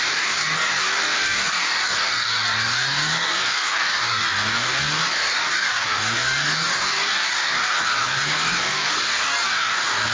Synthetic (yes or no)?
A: yes